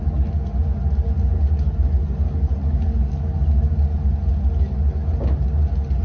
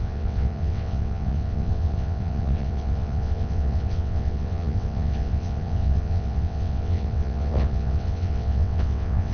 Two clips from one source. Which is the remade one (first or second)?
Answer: second